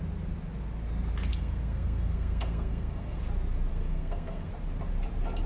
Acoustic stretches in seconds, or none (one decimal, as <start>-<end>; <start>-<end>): 0.0-1.3; 3.2-3.7; 4.5-5.5